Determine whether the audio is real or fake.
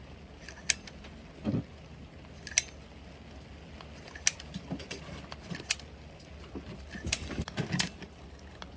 real